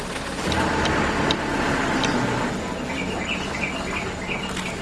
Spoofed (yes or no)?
no